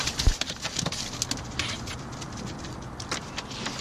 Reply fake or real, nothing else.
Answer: real